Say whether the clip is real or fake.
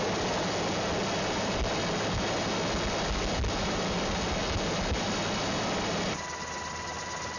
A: real